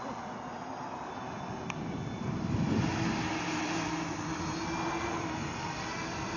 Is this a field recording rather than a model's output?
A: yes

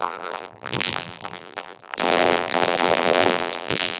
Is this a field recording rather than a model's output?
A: no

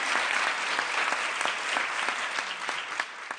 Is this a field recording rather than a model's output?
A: yes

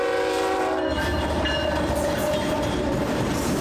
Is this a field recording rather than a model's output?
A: no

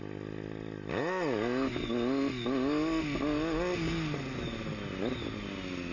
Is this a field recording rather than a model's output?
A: yes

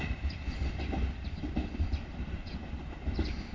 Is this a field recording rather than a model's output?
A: yes